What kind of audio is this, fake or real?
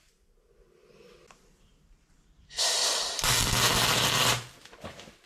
real